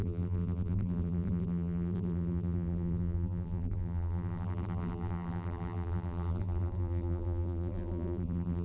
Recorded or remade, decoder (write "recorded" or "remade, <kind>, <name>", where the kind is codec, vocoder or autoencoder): remade, vocoder, BigVGAN v2